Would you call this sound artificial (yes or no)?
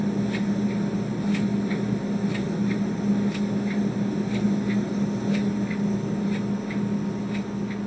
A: no